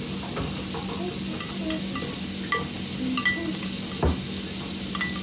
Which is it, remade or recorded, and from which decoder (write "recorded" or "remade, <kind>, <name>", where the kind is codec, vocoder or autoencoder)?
recorded